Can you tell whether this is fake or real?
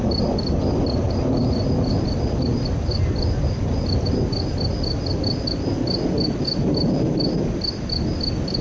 real